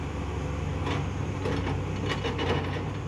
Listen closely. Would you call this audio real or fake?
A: real